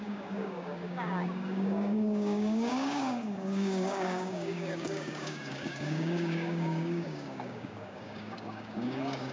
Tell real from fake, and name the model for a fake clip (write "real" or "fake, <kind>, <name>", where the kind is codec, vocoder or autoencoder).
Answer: fake, codec, DAC